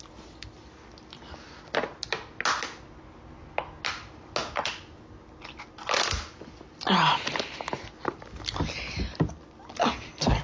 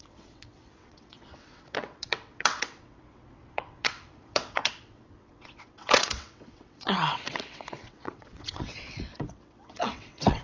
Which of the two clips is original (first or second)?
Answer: first